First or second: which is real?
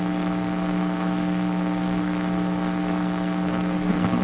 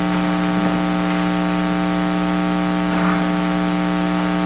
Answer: second